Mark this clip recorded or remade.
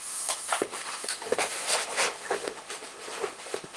remade